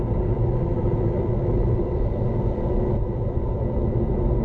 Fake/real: real